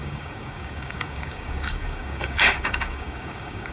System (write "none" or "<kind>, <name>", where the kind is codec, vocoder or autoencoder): codec, DAC